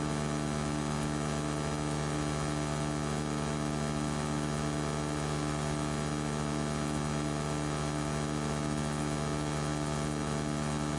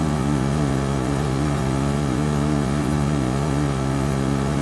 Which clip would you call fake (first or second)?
second